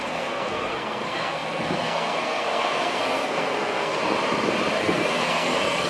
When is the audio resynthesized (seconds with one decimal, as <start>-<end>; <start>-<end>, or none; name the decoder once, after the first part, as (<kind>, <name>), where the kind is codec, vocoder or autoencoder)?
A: 0.0-4.0 (codec, SNAC); 4.8-5.9